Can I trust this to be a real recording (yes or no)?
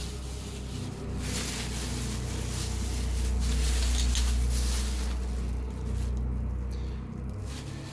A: yes